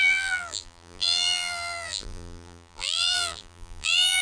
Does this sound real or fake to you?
fake